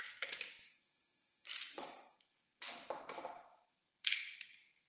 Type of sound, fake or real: fake